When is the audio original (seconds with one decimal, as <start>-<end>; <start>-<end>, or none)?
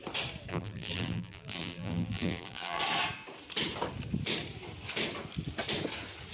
0.0-0.5; 2.8-6.3